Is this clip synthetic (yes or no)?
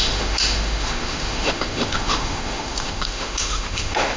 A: yes